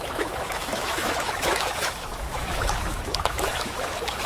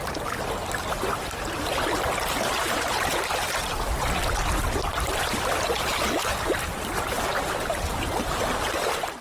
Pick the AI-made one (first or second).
first